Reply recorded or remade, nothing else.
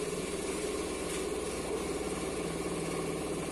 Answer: recorded